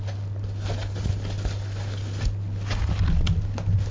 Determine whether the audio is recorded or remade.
recorded